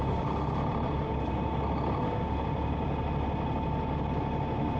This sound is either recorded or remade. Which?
recorded